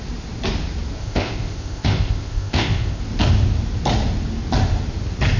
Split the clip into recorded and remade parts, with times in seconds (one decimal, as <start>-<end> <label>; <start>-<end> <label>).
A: 0.0-1.0 recorded; 1.0-3.0 remade; 3.0-5.4 recorded